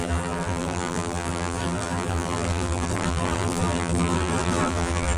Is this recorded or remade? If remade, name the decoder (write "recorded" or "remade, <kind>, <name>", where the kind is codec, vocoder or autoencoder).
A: remade, vocoder, BigVGAN v2